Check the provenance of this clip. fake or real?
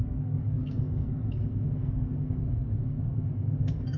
fake